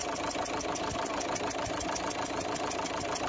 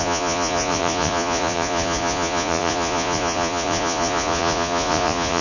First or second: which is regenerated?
second